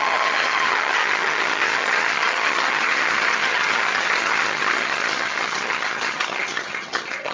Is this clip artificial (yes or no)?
yes